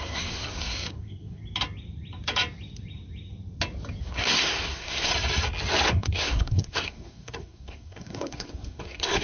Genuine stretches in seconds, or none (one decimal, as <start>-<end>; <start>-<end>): 1.4-4.0; 5.1-5.9